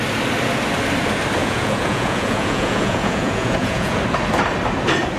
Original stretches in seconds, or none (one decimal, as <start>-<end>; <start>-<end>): 0.0-1.4; 4.0-5.2